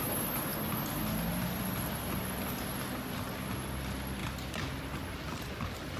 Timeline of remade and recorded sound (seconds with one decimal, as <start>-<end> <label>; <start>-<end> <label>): 0.0-6.0 recorded